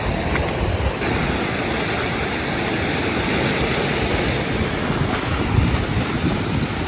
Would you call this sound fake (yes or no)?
no